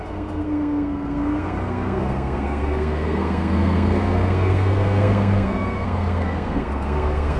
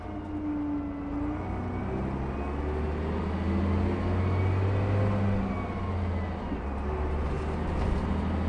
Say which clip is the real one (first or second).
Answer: second